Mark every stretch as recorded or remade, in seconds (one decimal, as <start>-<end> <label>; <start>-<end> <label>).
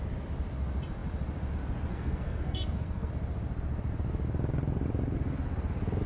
0.0-1.9 recorded; 1.9-3.1 remade; 3.1-6.1 recorded